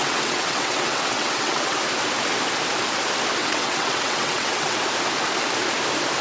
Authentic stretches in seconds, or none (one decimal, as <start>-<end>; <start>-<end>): 1.8-3.4; 4.8-6.2